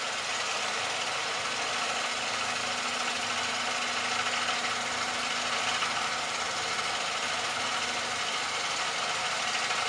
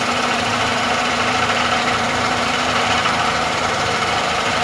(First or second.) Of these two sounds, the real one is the first